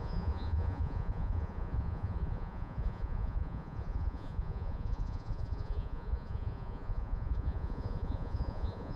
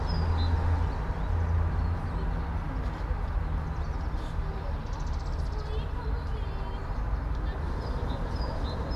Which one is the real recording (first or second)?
second